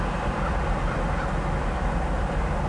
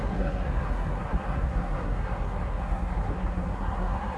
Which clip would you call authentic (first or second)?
first